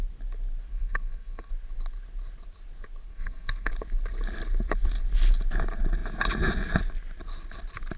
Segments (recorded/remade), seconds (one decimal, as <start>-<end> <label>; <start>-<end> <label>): 0.0-0.7 recorded; 0.7-1.5 remade; 1.5-3.1 recorded; 3.1-3.7 remade; 3.7-8.0 recorded